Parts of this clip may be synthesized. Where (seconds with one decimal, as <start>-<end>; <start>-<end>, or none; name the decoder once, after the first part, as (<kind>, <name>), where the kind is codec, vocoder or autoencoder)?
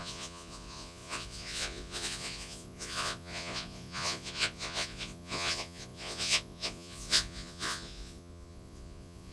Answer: 0.0-9.3 (vocoder, Vocos)